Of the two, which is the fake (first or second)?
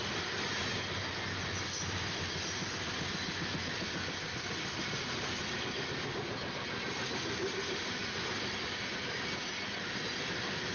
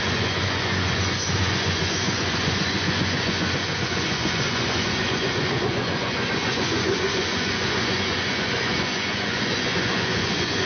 second